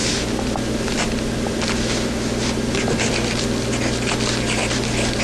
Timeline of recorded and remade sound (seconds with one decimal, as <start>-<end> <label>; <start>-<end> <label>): 0.0-5.2 recorded